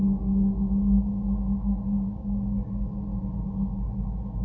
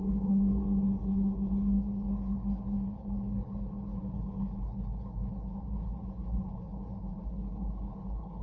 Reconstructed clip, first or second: second